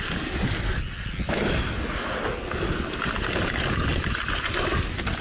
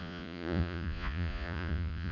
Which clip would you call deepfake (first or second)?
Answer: second